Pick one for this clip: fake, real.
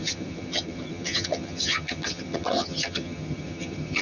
fake